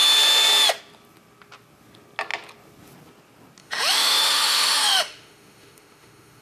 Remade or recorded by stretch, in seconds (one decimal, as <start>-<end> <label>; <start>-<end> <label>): 0.0-3.6 recorded; 3.6-6.4 remade